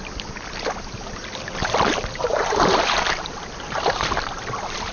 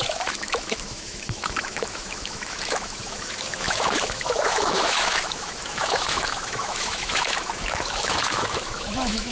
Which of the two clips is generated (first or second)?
second